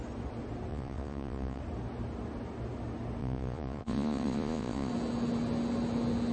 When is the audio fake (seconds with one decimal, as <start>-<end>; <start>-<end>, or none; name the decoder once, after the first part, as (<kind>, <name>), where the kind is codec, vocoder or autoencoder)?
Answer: 0.7-1.6 (vocoder, Vocos); 3.2-4.9